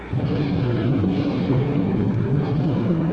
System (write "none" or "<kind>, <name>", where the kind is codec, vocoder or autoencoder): codec, SNAC